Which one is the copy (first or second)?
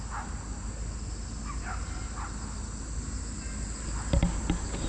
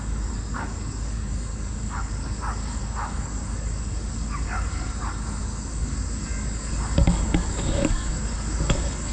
second